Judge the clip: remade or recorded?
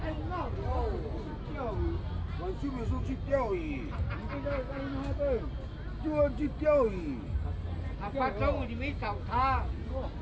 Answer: recorded